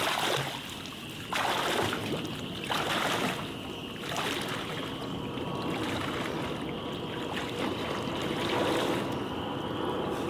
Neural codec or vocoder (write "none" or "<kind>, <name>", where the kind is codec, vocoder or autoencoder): none